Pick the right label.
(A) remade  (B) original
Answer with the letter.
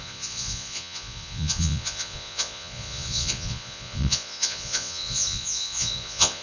A